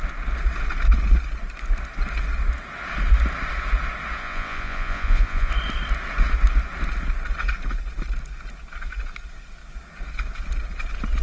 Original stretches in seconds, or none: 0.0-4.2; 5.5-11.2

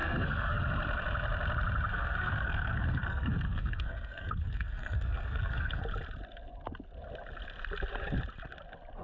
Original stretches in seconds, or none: 0.6-1.9; 5.8-9.0

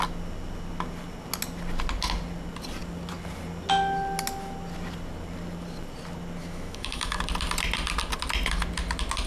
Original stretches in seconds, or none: 0.0-6.4; 7.2-9.3

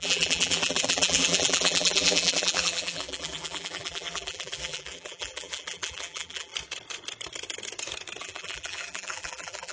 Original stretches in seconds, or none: 6.5-8.2

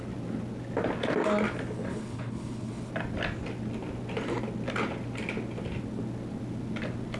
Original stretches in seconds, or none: 0.0-1.9; 2.9-7.2

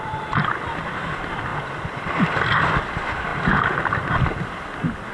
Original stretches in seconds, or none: 0.0-5.1

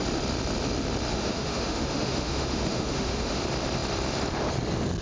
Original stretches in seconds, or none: 0.0-1.1; 3.4-5.0

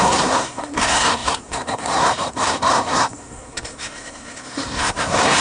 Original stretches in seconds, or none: none